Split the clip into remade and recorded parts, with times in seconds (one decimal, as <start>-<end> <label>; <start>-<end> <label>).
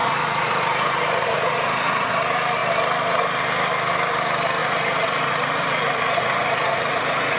0.0-2.1 remade; 2.1-4.6 recorded; 4.6-7.4 remade